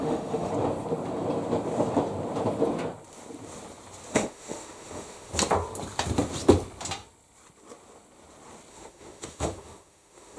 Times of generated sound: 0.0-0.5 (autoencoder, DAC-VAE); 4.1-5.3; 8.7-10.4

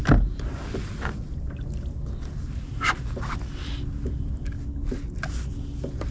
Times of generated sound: none

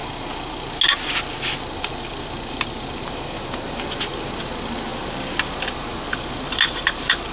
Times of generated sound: none

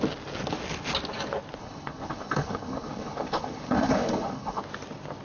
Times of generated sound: 1.6-4.6 (codec, HILCodec)